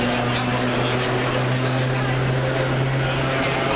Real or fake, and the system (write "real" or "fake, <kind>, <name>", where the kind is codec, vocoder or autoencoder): real